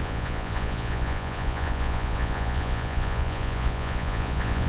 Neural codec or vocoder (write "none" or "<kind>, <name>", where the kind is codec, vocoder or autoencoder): vocoder, Vocos